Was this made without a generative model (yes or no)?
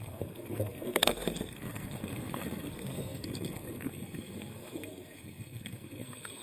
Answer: no